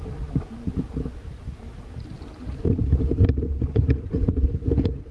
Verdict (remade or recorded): recorded